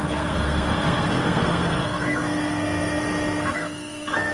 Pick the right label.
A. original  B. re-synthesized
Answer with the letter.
B